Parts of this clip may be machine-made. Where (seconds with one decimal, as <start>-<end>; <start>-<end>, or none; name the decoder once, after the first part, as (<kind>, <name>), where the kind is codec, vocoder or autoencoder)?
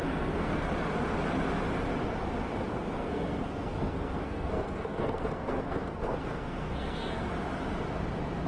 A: 0.0-0.7 (codec, SNAC); 2.7-7.3